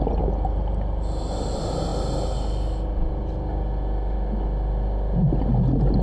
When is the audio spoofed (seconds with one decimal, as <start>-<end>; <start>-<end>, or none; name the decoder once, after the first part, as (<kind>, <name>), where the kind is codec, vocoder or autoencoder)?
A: none